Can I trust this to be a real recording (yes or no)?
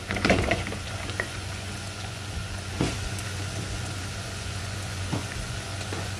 no